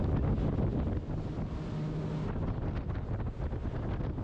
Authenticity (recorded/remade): recorded